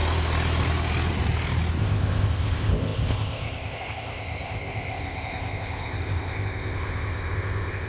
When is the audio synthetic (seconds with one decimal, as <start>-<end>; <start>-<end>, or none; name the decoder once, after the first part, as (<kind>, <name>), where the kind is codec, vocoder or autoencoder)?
1.8-7.9 (codec, ZipCodec)